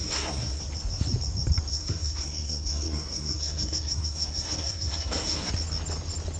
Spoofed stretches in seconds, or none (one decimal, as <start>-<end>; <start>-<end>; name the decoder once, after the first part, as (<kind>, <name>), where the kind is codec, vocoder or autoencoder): 0.0-0.6 (codec, SNAC); 1.7-5.5